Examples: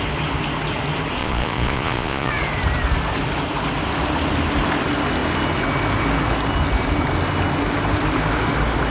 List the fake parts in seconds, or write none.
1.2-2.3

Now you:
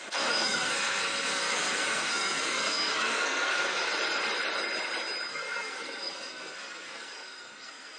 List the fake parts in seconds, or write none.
0.0-3.9; 5.3-8.0

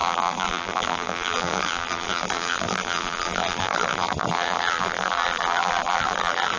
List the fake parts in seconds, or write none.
0.0-6.6

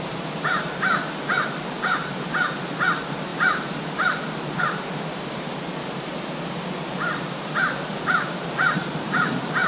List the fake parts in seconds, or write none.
0.0-6.1; 7.1-9.7

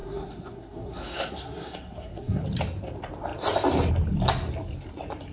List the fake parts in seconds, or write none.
0.0-2.4

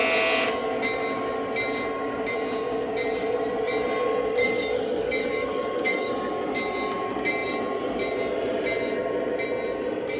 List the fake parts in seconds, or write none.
4.4-6.1